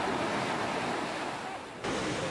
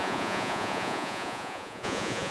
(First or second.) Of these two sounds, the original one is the first